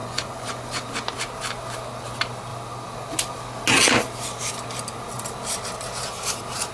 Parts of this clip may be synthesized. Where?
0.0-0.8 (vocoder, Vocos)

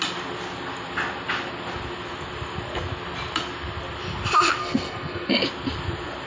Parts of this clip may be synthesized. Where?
4.6-5.3 (codec, SNAC)

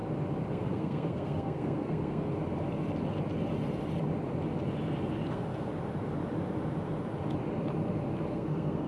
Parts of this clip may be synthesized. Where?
0.5-2.3 (codec, SNAC); 5.3-5.7; 8.3-8.9

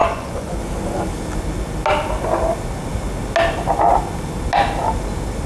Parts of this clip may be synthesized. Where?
0.0-0.6 (vocoder, Vocos)

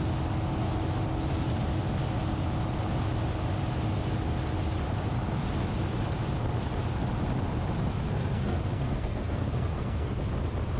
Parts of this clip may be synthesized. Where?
8.1-10.1 (codec, SNAC)

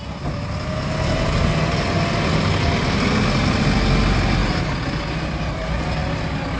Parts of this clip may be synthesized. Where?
none

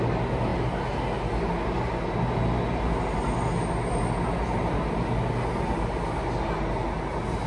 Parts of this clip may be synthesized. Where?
none

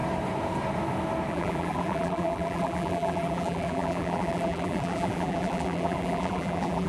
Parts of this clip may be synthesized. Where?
1.3-6.9 (vocoder, BigVGAN v2)